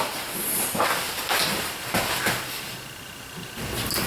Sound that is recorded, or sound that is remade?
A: recorded